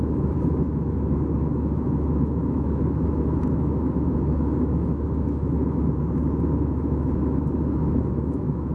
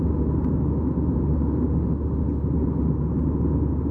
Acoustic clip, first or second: second